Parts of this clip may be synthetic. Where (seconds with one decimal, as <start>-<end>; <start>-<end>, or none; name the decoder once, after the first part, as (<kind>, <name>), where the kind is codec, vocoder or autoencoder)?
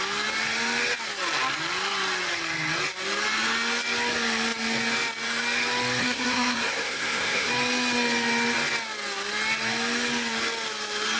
6.0-7.5 (codec, SNAC)